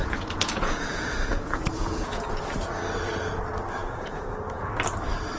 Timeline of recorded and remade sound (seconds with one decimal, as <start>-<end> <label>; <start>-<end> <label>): 0.0-2.5 remade; 2.5-3.8 recorded; 3.8-4.7 remade; 4.7-5.4 recorded